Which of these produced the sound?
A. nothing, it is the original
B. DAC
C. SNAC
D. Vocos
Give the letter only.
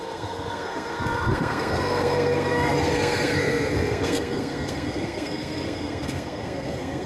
C